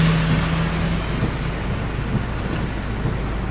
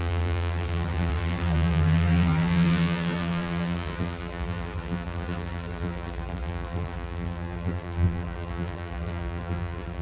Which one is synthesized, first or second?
second